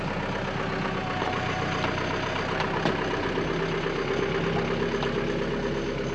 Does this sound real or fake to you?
real